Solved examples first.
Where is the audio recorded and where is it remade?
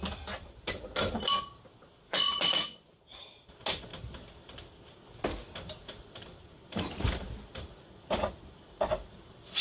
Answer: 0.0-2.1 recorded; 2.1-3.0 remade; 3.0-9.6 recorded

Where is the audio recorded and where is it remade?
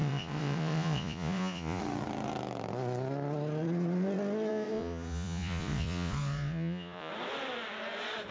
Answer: 0.0-1.8 remade; 1.8-4.5 recorded; 4.5-7.1 remade; 7.1-8.3 recorded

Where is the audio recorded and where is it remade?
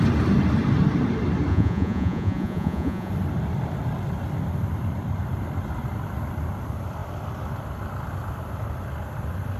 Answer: 0.0-1.5 recorded; 1.5-3.1 remade; 3.1-9.6 recorded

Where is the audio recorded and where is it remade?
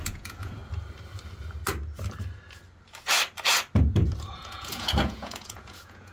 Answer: 0.0-0.6 remade; 0.6-4.3 recorded; 4.3-6.1 remade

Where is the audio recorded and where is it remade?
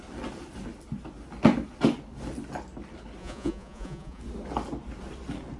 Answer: 0.0-3.2 recorded; 3.2-4.2 remade; 4.2-5.6 recorded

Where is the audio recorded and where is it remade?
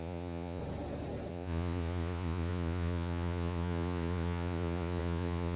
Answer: 0.0-0.6 remade; 0.6-1.3 recorded; 1.3-5.6 remade